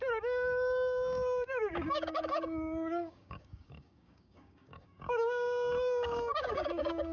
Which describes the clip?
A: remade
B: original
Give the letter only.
A